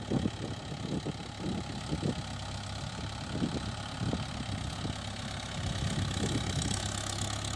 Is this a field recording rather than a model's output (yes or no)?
yes